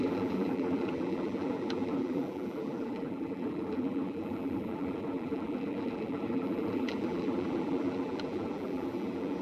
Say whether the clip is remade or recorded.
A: remade